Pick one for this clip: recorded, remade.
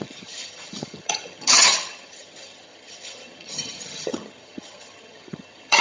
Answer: remade